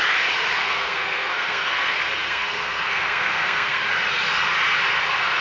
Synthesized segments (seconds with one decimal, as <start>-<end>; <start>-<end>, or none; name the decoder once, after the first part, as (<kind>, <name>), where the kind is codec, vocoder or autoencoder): 0.6-3.8 (codec, SNAC)